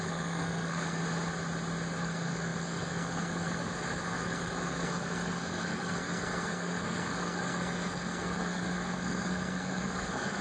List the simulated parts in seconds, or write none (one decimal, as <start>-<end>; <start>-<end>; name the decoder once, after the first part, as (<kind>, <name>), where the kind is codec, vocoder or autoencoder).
0.0-1.0 (codec, SNAC); 2.0-10.4

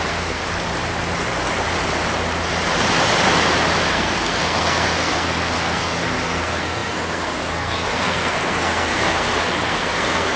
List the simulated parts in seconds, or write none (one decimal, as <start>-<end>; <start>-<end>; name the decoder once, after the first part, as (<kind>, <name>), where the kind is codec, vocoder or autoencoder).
0.0-0.4 (codec, SNAC); 3.9-10.4

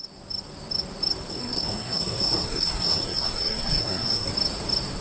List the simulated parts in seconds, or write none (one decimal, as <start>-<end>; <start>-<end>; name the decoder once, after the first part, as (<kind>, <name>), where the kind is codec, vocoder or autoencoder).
1.3-4.3 (codec, SNAC)

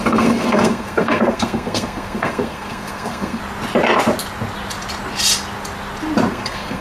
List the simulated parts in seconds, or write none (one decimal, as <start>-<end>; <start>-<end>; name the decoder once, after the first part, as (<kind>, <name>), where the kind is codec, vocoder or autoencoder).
0.0-3.4 (codec, SNAC); 6.3-6.8

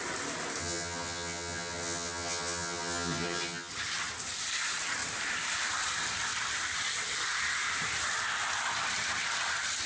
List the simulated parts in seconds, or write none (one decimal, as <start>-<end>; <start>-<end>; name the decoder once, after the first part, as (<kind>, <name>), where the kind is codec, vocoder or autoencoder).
0.6-3.7 (vocoder, HiFi-GAN)